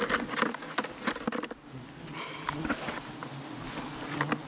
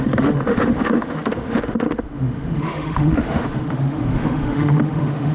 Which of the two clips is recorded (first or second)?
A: first